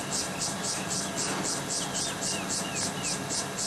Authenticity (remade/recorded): recorded